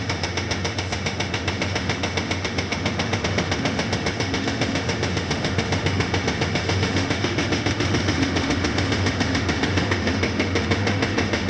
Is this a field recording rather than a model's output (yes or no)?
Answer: no